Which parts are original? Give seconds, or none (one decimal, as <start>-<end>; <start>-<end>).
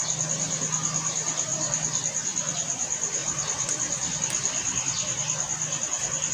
0.0-6.3